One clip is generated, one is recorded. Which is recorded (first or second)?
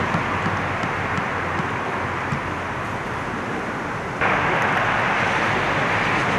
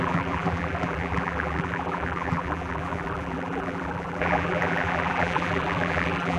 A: first